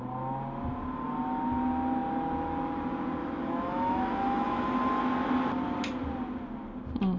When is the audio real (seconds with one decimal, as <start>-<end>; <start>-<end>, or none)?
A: 0.0-3.2; 5.0-7.2